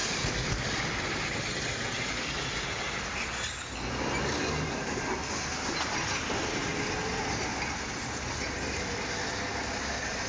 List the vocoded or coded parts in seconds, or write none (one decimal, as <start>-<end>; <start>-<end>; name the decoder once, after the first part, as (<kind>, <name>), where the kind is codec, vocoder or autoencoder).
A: none